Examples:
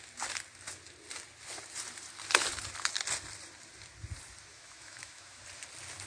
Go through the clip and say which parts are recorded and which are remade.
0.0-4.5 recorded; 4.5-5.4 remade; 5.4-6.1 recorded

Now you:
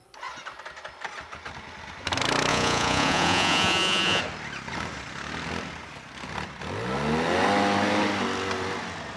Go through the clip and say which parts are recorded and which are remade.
0.0-2.5 recorded; 2.5-4.2 remade; 4.2-9.2 recorded

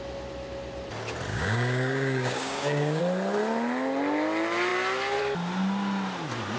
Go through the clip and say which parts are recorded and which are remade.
0.0-1.3 recorded; 1.3-3.0 remade; 3.0-6.6 recorded

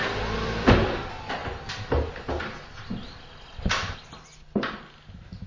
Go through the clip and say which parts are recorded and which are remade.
0.0-5.5 recorded

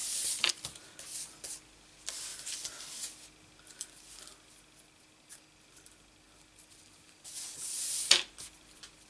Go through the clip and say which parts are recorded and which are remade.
0.0-0.5 remade; 0.5-9.1 recorded

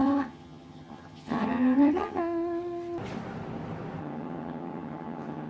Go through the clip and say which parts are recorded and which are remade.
0.0-2.2 remade; 2.2-4.0 recorded; 4.0-5.5 remade

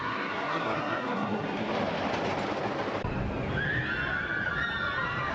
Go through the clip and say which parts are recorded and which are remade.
0.0-1.7 remade; 1.7-5.3 recorded

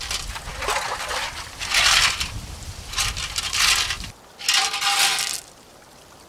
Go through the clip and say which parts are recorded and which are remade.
0.0-6.3 recorded